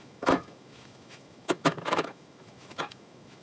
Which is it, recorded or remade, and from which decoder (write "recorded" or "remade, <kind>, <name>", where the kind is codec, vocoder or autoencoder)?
remade, autoencoder, DAC-VAE